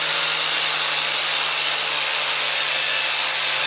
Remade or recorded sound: recorded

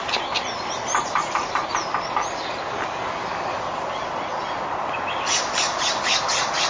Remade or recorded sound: recorded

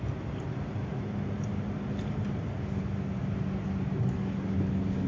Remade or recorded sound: recorded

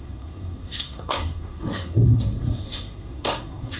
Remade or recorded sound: remade